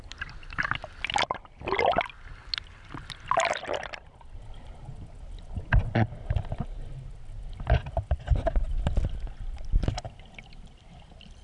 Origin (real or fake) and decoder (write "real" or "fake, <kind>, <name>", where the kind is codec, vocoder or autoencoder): real